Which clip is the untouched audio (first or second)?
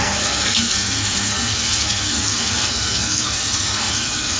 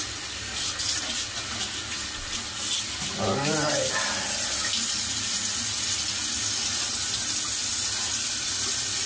second